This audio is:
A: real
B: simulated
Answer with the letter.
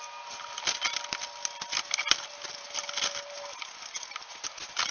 A